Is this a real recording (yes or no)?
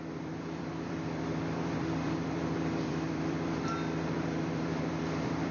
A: no